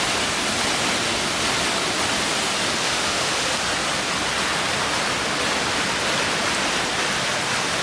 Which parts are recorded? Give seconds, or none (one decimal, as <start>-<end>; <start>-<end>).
0.0-2.8; 3.3-7.8